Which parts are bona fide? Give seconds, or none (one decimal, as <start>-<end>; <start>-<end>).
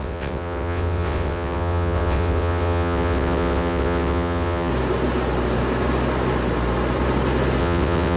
4.7-7.6